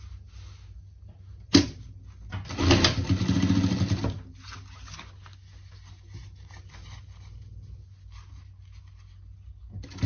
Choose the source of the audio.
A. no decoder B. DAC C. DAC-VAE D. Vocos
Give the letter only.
A